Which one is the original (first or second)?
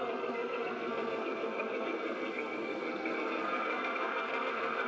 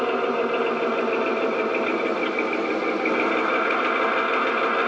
second